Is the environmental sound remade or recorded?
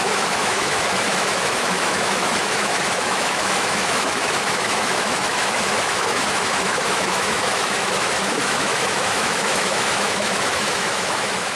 remade